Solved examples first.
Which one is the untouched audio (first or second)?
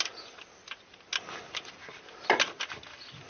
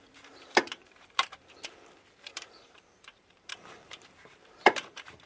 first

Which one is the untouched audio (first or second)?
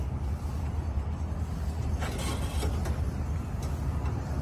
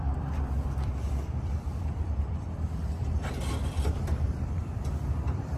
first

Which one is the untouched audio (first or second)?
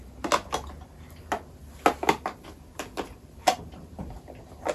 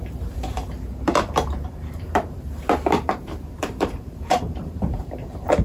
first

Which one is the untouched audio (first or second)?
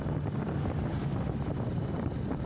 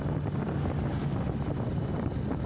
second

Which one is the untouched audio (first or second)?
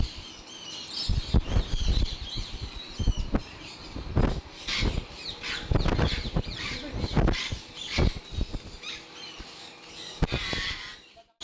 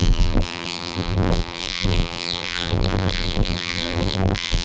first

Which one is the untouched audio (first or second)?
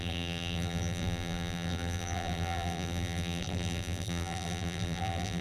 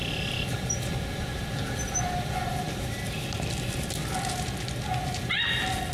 second